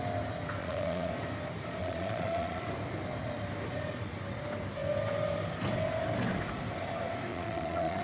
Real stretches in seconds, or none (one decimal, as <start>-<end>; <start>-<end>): 0.0-0.6; 1.1-1.8; 2.6-7.3